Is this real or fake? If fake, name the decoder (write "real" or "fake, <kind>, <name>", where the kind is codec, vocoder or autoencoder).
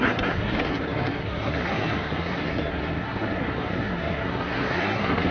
fake, codec, SNAC